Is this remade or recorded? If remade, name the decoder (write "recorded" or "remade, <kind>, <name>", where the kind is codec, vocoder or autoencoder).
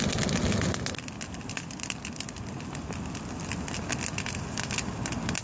recorded